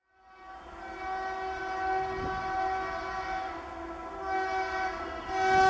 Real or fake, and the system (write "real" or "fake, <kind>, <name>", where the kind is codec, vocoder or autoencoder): real